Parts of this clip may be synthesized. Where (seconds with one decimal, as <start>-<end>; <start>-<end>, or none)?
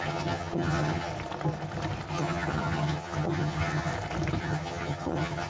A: 0.0-1.1; 2.1-3.9; 4.4-5.5